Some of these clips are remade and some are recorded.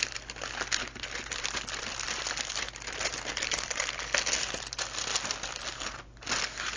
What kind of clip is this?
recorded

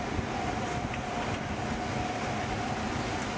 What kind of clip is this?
recorded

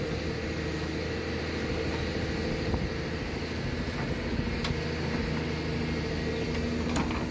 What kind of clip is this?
recorded